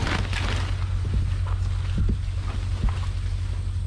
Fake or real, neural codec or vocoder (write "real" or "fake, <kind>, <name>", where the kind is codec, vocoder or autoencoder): real